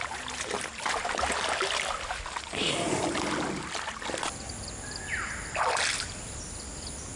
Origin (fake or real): real